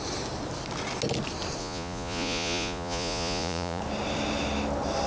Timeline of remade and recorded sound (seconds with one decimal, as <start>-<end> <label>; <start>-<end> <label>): 0.0-1.6 recorded; 1.6-3.8 remade; 3.8-5.1 recorded